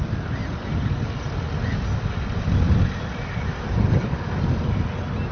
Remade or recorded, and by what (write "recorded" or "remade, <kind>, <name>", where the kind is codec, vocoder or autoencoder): recorded